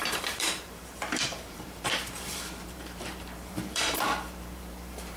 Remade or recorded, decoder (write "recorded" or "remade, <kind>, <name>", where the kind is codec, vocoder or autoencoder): remade, vocoder, BigVGAN v2